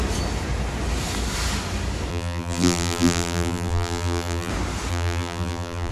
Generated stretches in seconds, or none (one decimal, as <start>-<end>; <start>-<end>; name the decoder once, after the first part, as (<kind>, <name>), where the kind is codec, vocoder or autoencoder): 2.1-4.5 (vocoder, BigVGAN v2); 4.9-5.9